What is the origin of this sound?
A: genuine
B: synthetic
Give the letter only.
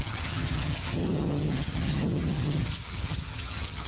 B